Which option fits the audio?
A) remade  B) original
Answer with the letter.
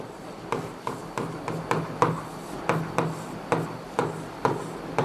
B